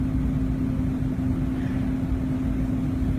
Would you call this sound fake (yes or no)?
no